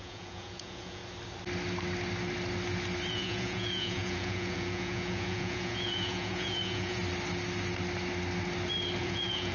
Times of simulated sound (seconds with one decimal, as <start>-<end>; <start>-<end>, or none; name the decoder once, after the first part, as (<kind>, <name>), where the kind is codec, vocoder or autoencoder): 0.0-1.0 (vocoder, Vocos); 3.1-7.0; 9.0-9.5